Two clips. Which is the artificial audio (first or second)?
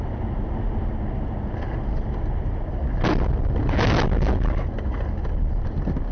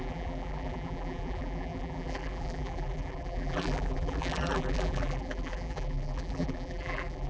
second